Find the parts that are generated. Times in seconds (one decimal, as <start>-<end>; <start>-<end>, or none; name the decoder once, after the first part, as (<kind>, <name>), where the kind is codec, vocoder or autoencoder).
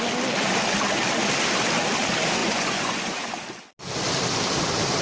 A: 2.4-3.3 (vocoder, Vocos)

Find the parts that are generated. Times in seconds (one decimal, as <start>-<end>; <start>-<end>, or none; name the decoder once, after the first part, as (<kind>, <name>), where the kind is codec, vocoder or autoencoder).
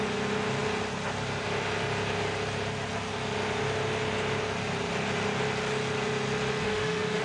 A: 6.6-7.2 (autoencoder, DAC-VAE)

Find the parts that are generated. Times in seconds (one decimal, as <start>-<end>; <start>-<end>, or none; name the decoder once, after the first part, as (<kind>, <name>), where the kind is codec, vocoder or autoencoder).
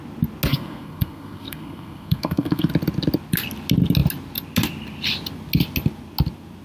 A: 0.5-2.7 (codec, SNAC)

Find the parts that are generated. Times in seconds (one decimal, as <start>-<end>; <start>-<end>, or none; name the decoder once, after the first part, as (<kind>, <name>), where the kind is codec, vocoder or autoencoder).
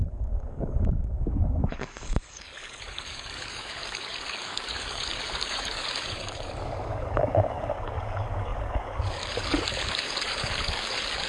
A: 0.0-11.3 (codec, DAC)